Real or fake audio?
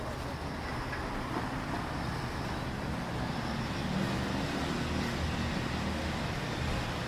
real